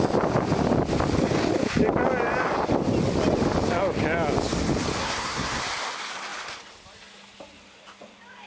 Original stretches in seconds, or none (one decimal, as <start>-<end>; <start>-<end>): 0.0-5.0; 5.6-8.5